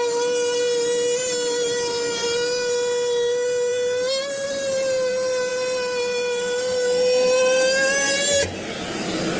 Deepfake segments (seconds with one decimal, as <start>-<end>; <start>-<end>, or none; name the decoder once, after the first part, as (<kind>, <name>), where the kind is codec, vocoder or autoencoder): none